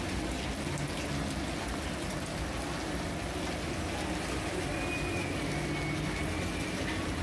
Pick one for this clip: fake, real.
real